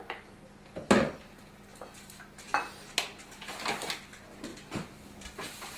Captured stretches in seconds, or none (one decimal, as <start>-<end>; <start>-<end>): 0.0-5.8